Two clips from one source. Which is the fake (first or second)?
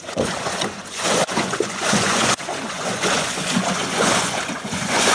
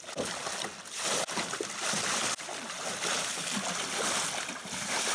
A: first